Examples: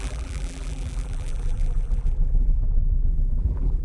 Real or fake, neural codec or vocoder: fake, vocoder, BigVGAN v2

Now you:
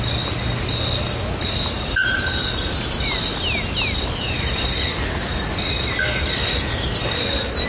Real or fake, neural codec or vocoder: real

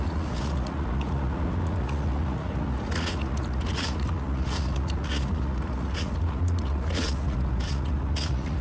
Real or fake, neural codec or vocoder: fake, vocoder, Vocos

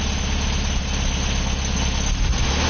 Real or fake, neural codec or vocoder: real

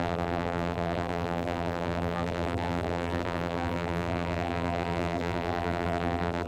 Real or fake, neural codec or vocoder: fake, vocoder, BigVGAN v2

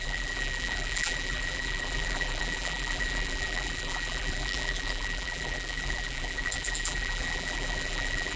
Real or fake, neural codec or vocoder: fake, vocoder, BigVGAN v2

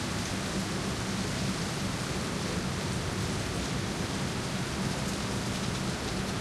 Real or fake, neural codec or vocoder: real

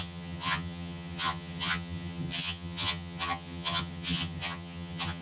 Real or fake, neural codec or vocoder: fake, vocoder, HiFi-GAN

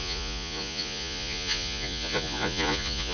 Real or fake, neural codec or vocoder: fake, vocoder, Vocos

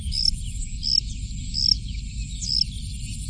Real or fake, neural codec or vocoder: real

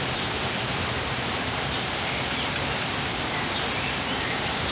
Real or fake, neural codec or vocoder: fake, vocoder, BigVGAN v2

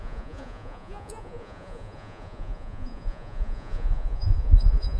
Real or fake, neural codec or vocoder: fake, vocoder, Vocos